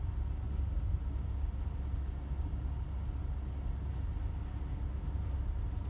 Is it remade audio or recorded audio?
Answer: recorded